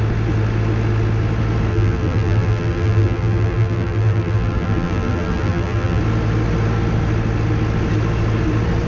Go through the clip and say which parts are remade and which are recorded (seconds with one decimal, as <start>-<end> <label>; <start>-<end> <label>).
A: 0.0-1.7 recorded; 1.7-6.0 remade; 6.0-8.9 recorded